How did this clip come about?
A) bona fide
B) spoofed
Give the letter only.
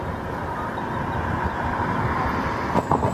A